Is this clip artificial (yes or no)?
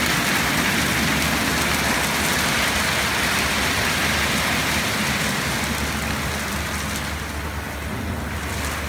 no